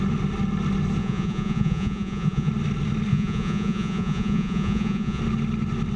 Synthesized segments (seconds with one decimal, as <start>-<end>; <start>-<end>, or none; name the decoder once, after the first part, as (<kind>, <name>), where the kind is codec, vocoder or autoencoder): 1.0-2.5 (vocoder, Vocos); 3.1-5.2